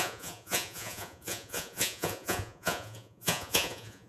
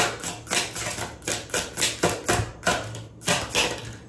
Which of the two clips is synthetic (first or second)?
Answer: first